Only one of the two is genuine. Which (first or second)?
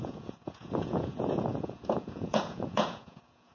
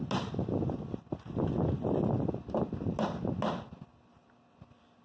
second